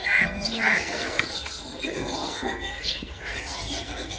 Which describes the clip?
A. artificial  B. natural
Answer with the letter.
A